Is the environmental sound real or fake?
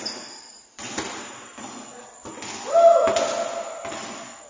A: real